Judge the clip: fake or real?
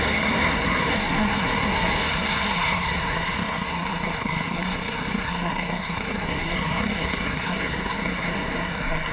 fake